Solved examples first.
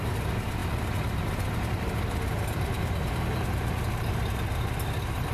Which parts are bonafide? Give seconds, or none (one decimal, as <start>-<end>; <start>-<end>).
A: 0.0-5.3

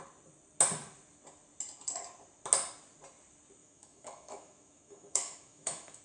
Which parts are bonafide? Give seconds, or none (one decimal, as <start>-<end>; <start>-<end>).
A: 0.0-3.6

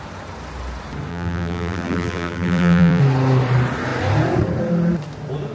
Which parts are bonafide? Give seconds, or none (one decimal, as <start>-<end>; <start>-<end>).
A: 0.0-1.1; 3.0-5.5

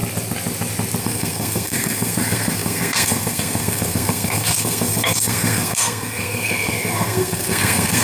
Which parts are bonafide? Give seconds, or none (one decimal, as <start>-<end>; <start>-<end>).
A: 0.0-1.0

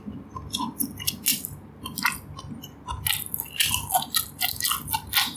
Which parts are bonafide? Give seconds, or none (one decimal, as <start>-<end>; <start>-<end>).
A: 0.0-5.4